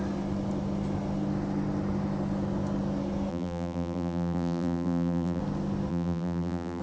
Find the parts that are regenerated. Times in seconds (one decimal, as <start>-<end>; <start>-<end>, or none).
3.3-5.4; 5.9-6.8